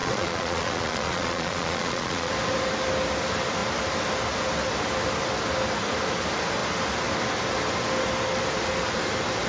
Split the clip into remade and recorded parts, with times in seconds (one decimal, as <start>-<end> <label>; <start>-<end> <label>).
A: 0.0-2.3 remade; 2.3-9.5 recorded